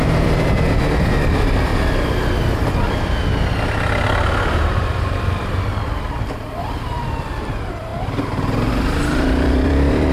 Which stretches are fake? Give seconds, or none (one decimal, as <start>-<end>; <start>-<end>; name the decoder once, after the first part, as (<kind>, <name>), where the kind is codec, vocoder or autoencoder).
0.0-1.7 (vocoder, BigVGAN v2); 6.0-7.9; 8.7-10.1